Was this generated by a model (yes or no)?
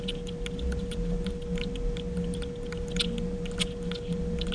no